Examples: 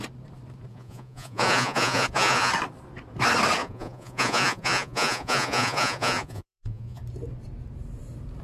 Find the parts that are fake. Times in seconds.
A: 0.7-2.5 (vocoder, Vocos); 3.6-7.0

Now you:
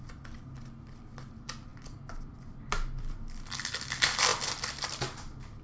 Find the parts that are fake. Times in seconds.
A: none

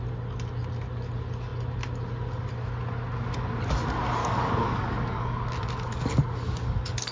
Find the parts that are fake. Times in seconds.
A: 4.2-7.1 (codec, DAC)